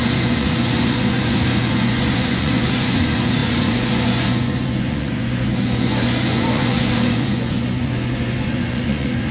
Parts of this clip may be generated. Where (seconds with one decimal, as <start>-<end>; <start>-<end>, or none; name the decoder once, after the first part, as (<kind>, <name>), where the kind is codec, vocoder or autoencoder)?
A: 0.0-9.3 (vocoder, Vocos)